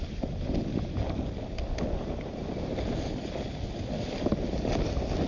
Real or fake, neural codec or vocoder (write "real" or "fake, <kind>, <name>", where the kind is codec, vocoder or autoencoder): real